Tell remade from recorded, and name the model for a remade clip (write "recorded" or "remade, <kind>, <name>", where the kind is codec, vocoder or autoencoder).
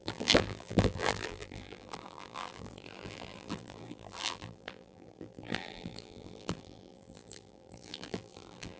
remade, vocoder, BigVGAN v2